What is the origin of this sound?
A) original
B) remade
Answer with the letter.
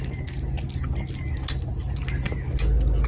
A